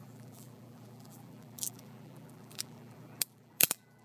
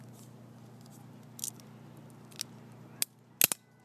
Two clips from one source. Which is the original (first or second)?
second